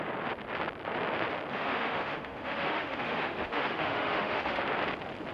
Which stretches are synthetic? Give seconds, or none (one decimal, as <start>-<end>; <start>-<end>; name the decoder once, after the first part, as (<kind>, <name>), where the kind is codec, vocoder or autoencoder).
1.5-4.6 (autoencoder, DAC-VAE)

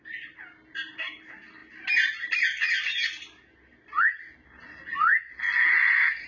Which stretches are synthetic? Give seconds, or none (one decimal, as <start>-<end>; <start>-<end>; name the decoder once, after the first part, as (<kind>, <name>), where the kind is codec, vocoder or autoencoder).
none